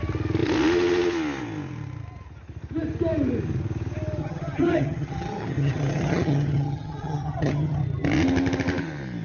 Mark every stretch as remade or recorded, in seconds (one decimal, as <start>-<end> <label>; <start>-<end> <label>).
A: 0.0-4.2 recorded; 4.2-7.8 remade; 7.8-9.2 recorded

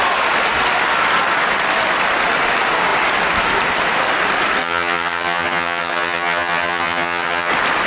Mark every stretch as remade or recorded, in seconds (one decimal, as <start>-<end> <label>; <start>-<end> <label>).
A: 0.0-4.6 recorded; 4.6-7.5 remade; 7.5-7.9 recorded

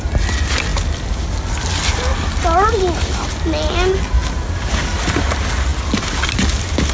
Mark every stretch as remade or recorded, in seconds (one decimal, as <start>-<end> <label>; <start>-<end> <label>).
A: 0.0-6.9 recorded

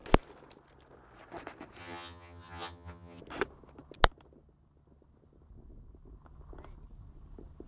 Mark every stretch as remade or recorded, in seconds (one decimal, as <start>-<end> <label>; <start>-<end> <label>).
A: 0.0-1.8 recorded; 1.8-3.2 remade; 3.2-7.7 recorded

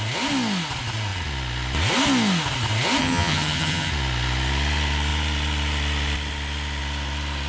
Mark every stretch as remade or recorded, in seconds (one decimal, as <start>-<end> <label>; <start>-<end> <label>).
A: 0.0-3.0 recorded; 3.0-3.9 remade; 3.9-7.5 recorded